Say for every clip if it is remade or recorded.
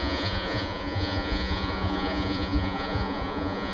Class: remade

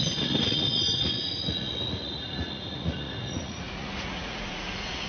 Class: remade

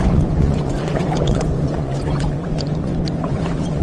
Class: remade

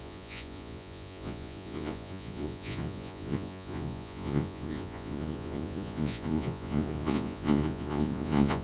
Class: remade